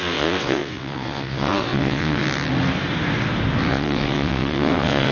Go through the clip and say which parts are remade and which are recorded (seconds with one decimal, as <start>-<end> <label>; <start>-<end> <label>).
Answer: 0.0-2.2 remade; 2.2-3.7 recorded; 3.7-5.1 remade